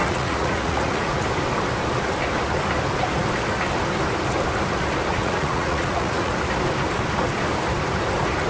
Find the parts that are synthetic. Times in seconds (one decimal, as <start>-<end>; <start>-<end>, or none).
0.0-1.2; 5.1-6.3